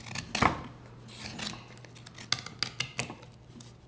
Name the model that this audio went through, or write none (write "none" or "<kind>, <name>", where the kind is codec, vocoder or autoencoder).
none